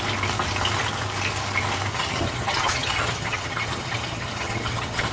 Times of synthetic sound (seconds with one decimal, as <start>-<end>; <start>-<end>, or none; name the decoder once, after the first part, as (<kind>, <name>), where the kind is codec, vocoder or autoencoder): 1.9-5.1 (vocoder, HiFi-GAN)